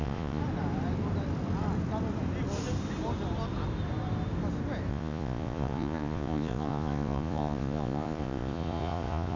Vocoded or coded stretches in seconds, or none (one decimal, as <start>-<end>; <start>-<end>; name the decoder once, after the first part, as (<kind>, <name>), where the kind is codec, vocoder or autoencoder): 0.0-0.4 (vocoder, Vocos); 4.9-9.4